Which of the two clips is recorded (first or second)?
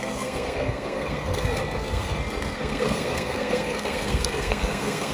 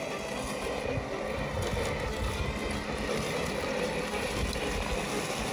second